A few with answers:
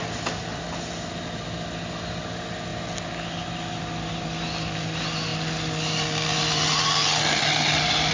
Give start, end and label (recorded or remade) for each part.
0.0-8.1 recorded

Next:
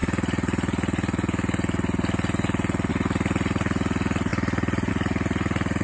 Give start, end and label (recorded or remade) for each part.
0.0-5.8 recorded

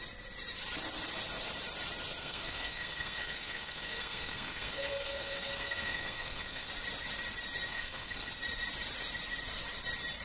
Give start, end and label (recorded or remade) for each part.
0.0-2.2 recorded; 2.2-6.7 remade; 6.7-7.7 recorded; 7.7-8.3 remade; 8.3-10.2 recorded